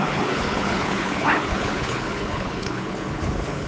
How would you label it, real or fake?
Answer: fake